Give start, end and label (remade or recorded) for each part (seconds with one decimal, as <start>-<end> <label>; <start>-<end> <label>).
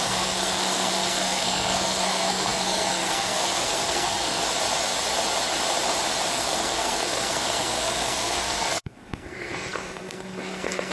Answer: 0.0-4.4 remade; 4.4-6.3 recorded; 6.3-10.9 remade